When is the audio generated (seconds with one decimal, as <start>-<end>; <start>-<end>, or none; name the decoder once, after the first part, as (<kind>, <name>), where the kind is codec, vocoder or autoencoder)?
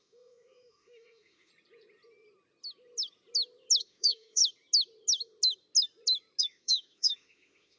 0.0-1.5 (autoencoder, DAC-VAE); 3.8-4.4; 6.4-7.8